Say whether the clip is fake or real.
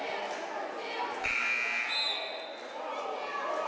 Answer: real